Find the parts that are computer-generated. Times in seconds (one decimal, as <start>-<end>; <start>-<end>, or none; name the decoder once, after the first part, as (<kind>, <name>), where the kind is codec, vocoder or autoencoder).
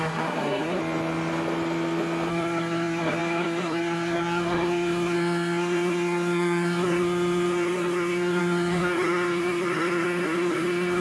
0.0-0.8 (codec, SNAC); 2.3-11.0